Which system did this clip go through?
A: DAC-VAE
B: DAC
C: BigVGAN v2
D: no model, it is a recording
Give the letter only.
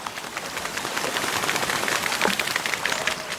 D